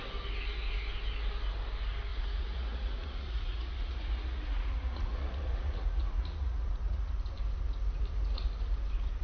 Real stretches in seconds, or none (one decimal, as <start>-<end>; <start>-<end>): 0.0-2.1; 7.1-9.2